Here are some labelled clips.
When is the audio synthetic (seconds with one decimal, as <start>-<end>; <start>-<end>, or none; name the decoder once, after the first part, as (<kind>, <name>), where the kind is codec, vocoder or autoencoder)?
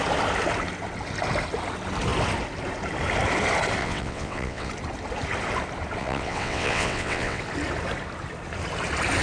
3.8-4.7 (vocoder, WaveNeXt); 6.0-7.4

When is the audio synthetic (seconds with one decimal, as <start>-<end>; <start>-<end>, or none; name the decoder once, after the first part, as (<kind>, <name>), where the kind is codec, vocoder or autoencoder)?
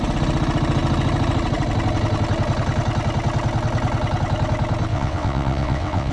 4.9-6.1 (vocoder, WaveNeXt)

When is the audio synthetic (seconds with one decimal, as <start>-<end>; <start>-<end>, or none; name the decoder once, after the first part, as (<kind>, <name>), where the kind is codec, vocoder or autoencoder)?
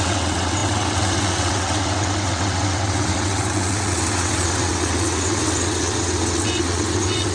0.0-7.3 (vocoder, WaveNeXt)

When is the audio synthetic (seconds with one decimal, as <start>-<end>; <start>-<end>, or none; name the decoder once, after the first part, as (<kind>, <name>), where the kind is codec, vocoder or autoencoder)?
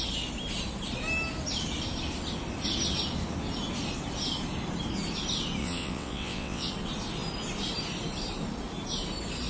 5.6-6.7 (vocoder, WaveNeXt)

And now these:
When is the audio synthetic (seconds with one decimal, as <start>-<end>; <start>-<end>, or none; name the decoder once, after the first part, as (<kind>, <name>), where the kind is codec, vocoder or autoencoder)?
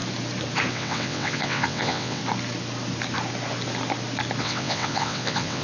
0.7-2.2 (vocoder, WaveNeXt); 4.4-5.6